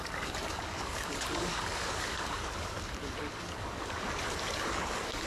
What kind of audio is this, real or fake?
fake